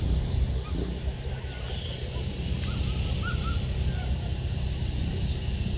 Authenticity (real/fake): real